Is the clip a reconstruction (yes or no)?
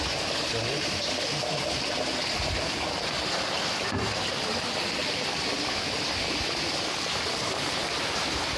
no